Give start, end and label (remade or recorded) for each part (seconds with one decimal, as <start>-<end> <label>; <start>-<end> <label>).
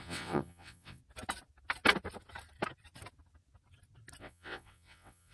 0.0-1.0 remade; 1.0-4.2 recorded; 4.2-5.3 remade